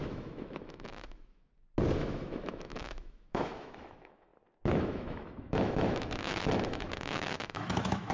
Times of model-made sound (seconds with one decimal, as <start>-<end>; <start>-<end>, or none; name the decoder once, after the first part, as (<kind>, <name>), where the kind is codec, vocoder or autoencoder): 0.0-1.5 (autoencoder, DAC-VAE); 2.0-4.3; 4.8-8.1